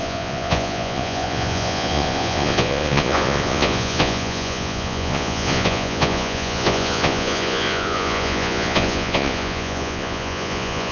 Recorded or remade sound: remade